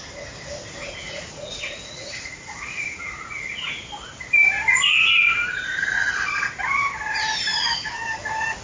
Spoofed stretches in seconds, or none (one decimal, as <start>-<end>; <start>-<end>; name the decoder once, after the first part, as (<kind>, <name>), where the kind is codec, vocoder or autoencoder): 0.8-3.7 (vocoder, Vocos); 5.5-6.3